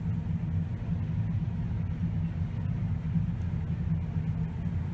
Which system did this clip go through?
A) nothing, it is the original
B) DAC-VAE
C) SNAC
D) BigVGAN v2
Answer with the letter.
A